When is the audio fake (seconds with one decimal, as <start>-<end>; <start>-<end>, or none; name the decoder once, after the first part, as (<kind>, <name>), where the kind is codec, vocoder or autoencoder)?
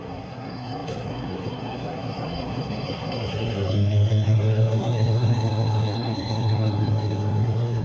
0.0-7.8 (codec, SNAC)